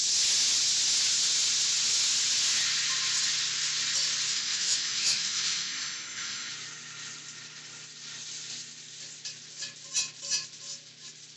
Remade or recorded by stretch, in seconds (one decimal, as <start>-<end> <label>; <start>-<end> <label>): 0.0-4.3 recorded; 4.3-6.5 remade; 6.5-11.4 recorded